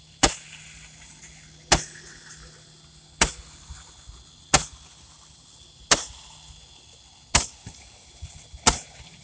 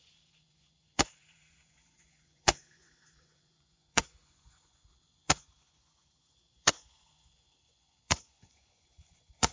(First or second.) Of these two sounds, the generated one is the second